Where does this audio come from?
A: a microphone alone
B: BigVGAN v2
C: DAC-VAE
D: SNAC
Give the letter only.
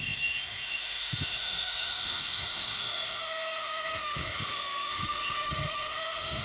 C